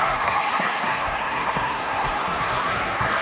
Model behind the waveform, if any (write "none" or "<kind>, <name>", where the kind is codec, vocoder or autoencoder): codec, SNAC